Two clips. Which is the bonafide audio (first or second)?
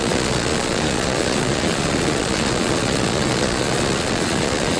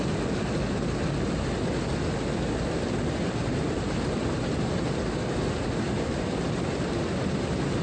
second